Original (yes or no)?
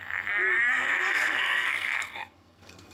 no